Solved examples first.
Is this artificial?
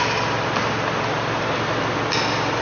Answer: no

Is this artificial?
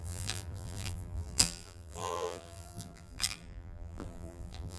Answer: yes